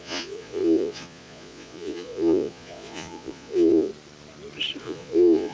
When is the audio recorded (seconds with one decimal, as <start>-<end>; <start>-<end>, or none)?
3.9-4.8